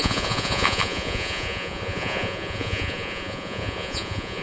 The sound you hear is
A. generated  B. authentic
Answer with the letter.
A